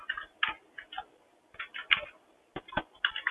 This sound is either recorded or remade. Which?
recorded